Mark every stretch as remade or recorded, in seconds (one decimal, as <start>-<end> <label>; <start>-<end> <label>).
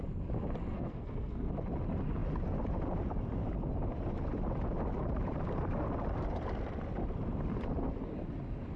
0.0-0.7 recorded; 0.7-1.5 remade; 1.5-8.8 recorded